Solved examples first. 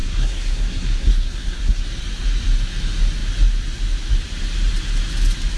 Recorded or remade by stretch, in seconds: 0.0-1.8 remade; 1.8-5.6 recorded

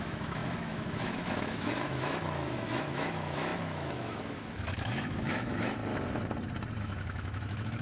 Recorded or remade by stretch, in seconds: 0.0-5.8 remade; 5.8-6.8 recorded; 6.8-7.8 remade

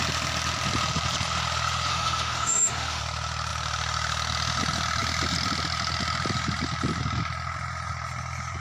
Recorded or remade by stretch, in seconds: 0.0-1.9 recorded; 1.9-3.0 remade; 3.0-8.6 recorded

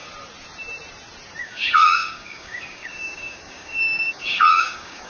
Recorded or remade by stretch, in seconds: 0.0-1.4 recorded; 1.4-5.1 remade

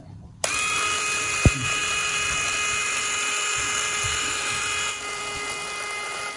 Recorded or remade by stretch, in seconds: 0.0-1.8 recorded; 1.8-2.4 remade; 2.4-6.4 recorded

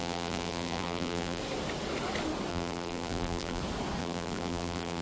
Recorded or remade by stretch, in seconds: 0.0-1.4 remade; 1.4-2.5 recorded; 2.5-3.6 remade; 3.6-4.0 recorded; 4.0-5.0 remade

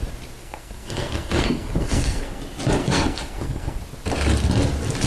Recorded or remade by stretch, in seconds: 0.0-0.4 recorded; 0.4-2.4 remade; 2.4-2.8 recorded; 2.8-3.8 remade; 3.8-5.1 recorded